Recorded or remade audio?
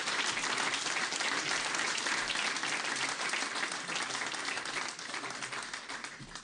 recorded